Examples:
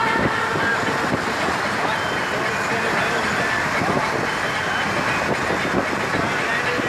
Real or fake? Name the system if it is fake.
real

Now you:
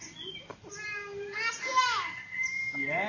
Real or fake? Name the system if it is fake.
real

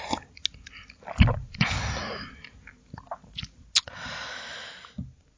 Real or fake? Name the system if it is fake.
real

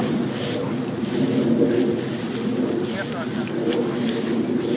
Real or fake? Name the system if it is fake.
real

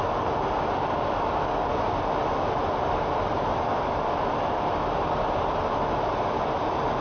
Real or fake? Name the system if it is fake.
real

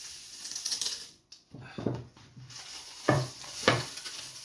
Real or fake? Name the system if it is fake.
fake, vocoder, Vocos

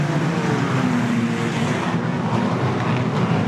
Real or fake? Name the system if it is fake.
real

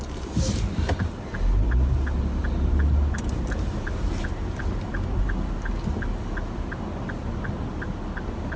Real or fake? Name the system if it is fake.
real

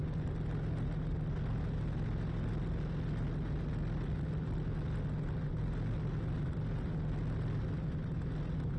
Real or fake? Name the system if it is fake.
real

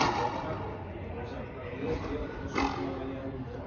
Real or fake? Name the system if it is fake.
real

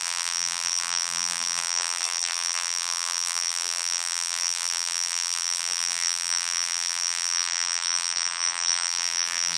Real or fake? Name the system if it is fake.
fake, vocoder, BigVGAN v2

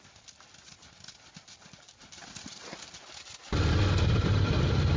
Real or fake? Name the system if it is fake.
real